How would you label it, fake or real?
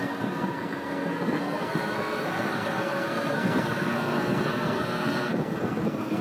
fake